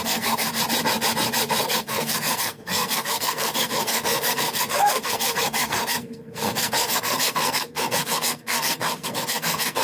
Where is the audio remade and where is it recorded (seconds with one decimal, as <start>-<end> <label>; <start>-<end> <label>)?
0.0-0.5 remade; 0.5-1.6 recorded; 1.6-9.8 remade